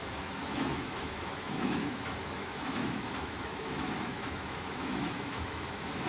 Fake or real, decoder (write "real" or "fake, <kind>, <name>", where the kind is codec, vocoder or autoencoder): fake, autoencoder, DAC-VAE